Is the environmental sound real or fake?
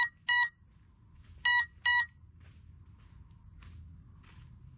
real